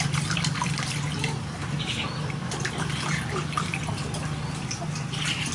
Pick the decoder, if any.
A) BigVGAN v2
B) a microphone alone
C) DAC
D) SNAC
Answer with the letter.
B